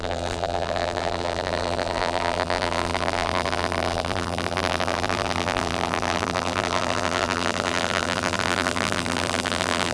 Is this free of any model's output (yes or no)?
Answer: no